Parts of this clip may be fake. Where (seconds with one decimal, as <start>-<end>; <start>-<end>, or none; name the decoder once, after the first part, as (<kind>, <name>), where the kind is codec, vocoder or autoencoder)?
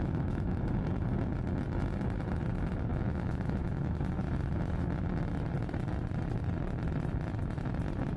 0.0-0.7 (autoencoder, DAC-VAE); 2.9-3.6